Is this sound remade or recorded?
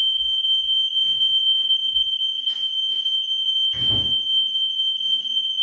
recorded